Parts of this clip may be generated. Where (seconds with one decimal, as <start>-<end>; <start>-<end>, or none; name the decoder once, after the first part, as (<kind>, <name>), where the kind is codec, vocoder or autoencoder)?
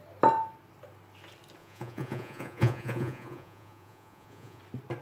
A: 1.6-4.6 (vocoder, Vocos)